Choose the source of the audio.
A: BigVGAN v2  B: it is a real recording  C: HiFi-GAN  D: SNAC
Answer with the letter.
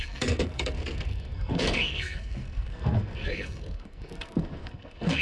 D